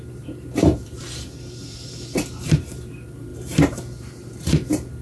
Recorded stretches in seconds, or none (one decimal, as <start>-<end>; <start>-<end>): none